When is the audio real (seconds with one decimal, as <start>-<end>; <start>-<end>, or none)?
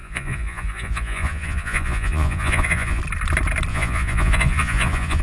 3.0-3.7